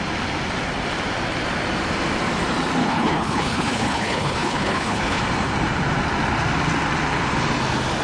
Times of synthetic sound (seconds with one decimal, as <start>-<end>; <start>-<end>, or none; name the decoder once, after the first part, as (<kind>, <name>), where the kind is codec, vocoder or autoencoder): 2.8-5.2 (codec, HILCodec)